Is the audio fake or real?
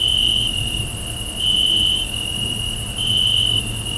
real